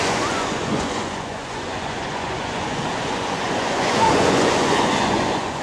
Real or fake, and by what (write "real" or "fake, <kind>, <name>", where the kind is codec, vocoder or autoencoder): fake, vocoder, Vocos